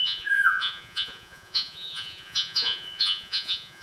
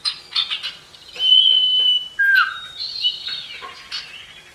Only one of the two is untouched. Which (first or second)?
second